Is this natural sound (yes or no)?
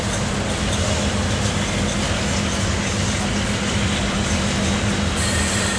yes